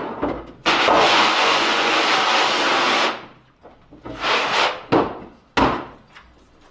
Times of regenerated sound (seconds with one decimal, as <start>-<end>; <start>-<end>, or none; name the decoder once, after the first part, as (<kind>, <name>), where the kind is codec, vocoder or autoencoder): 0.6-2.0 (vocoder, Vocos)